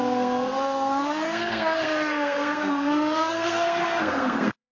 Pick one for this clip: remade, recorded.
remade